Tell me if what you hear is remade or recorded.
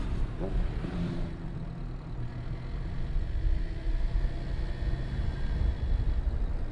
recorded